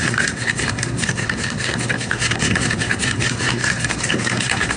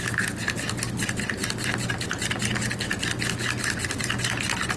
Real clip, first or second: second